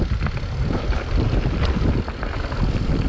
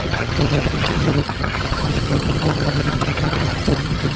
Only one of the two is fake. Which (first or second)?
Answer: second